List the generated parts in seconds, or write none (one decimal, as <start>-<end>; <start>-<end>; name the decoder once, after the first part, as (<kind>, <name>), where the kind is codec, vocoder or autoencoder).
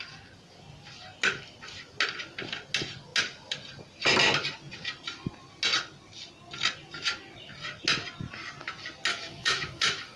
9.1-10.2 (autoencoder, DAC-VAE)